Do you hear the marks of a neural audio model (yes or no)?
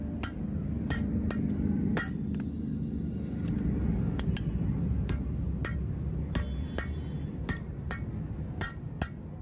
no